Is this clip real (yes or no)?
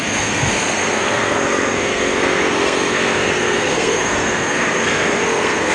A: no